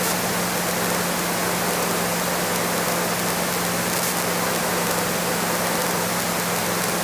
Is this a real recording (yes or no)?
yes